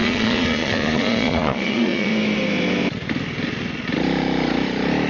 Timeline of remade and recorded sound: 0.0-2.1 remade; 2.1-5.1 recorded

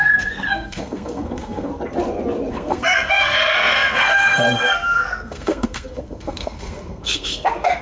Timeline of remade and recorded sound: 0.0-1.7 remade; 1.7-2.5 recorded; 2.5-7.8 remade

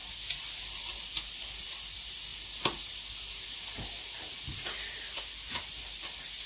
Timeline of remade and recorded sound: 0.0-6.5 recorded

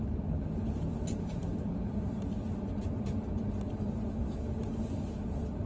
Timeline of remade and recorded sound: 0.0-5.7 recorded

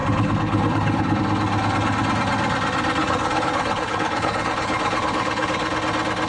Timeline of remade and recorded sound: 0.0-1.2 remade; 1.2-3.0 recorded; 3.0-5.7 remade; 5.7-6.3 recorded

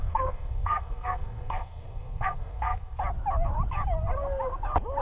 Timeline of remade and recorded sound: 0.0-3.0 remade; 3.0-5.0 recorded